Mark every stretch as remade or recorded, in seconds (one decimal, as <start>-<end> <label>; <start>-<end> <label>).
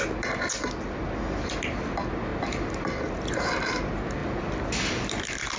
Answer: 0.0-5.6 recorded